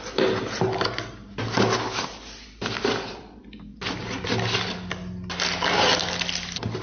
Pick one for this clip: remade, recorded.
recorded